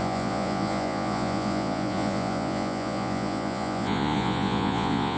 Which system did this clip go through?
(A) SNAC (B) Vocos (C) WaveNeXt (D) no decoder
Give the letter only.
B